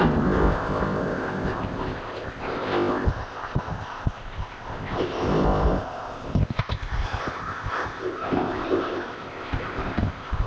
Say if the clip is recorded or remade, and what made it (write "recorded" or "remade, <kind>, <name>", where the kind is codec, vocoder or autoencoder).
remade, codec, ZipCodec